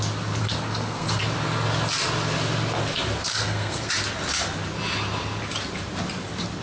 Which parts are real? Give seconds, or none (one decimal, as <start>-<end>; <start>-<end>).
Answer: 0.0-0.4; 1.2-3.3; 3.9-6.6